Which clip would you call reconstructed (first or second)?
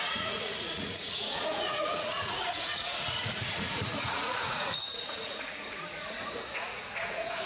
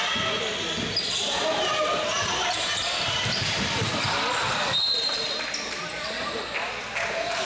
first